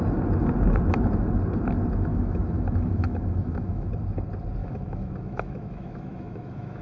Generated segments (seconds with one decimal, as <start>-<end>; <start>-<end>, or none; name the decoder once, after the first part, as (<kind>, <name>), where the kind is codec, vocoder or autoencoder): 2.1-3.9 (autoencoder, DAC-VAE); 4.6-6.8